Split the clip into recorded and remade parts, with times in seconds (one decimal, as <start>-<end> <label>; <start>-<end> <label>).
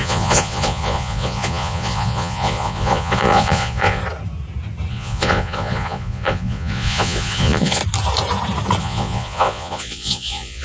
0.0-4.0 remade; 4.0-4.9 recorded; 4.9-7.8 remade; 7.8-8.8 recorded; 8.8-10.6 remade